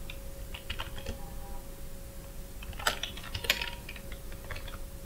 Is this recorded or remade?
recorded